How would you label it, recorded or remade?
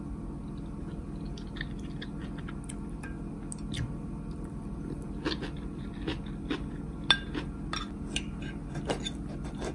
recorded